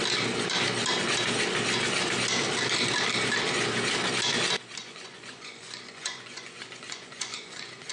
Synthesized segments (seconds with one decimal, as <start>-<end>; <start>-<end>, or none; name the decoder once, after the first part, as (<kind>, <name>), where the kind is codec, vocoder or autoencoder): 4.8-7.9 (vocoder, Vocos)